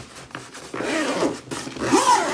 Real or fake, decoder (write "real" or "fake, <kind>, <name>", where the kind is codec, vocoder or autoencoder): real